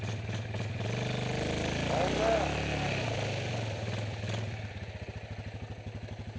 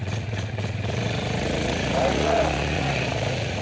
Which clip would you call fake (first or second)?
second